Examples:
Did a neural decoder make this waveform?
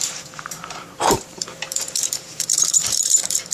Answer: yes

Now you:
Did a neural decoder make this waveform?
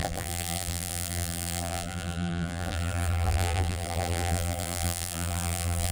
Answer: yes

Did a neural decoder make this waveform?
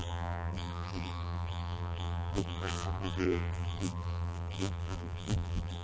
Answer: yes